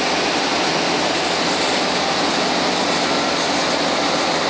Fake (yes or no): no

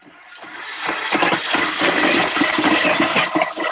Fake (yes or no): no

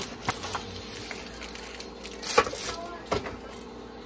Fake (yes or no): no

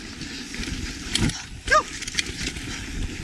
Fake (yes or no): no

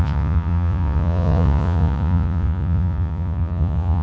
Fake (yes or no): yes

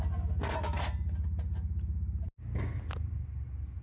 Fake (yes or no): no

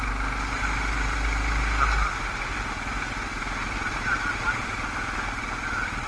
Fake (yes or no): no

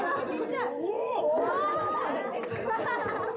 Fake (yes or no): no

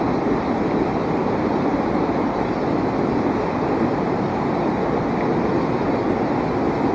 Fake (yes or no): no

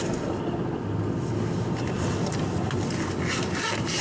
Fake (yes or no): no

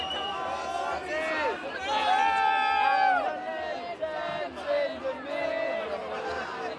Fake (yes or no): no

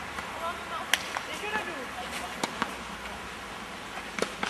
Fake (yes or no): no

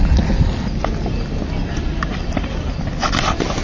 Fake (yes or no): no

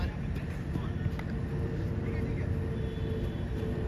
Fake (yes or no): no